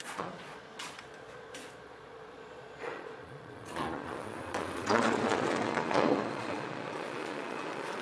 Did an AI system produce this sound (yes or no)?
yes